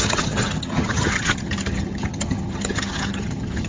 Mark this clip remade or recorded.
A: remade